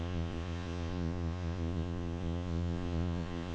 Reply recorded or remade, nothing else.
remade